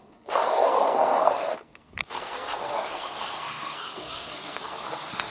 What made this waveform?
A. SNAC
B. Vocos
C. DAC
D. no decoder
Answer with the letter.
A